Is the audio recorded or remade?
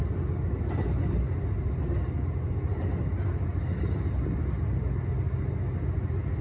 recorded